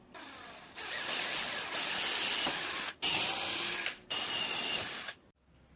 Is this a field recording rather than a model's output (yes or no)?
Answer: yes